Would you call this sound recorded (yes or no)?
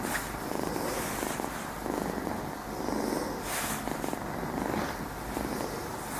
yes